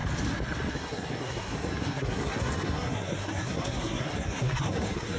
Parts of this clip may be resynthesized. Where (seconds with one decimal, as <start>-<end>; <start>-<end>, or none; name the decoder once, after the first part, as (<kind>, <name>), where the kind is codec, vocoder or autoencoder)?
0.7-5.2 (codec, SNAC)